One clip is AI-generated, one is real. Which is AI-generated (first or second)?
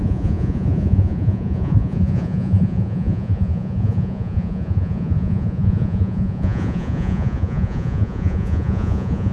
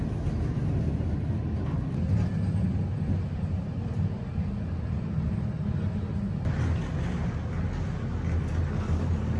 first